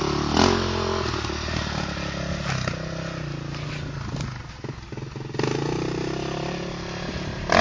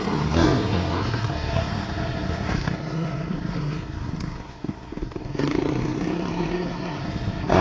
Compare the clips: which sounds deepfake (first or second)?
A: second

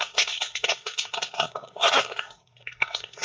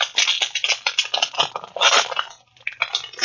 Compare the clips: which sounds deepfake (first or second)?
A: first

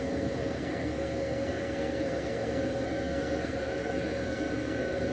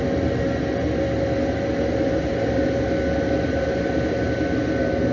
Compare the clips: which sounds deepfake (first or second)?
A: first